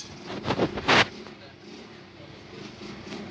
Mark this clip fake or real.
real